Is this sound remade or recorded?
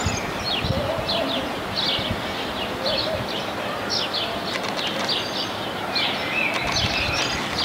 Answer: recorded